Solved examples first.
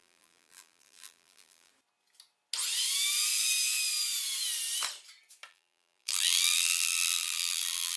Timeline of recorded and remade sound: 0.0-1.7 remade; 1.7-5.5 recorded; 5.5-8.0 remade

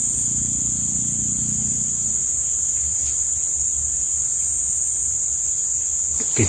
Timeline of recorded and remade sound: 0.0-6.5 recorded

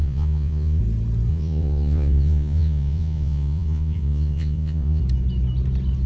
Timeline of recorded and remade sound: 0.0-0.8 remade; 0.8-1.3 recorded; 1.3-5.0 remade; 5.0-6.1 recorded

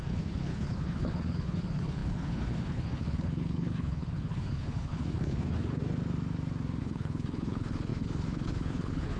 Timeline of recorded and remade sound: 0.0-5.8 remade; 5.8-6.8 recorded; 6.8-9.2 remade